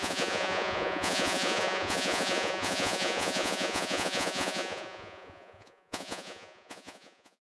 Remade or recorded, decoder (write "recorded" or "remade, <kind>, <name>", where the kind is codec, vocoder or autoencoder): remade, vocoder, Vocos